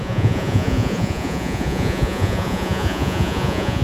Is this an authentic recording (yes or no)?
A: no